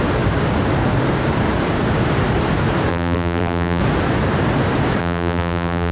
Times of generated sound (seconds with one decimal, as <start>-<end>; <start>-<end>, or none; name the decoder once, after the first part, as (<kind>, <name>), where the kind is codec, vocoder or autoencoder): 2.9-3.8 (vocoder, BigVGAN v2); 5.0-5.9